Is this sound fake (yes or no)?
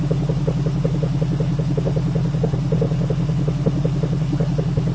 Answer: no